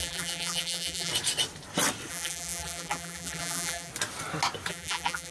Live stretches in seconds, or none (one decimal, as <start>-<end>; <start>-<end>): 1.1-2.1; 3.9-4.7